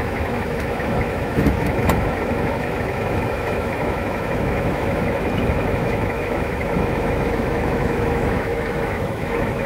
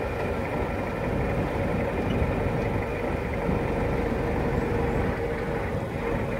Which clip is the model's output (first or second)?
first